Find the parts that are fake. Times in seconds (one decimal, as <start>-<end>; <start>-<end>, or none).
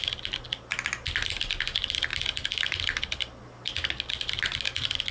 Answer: none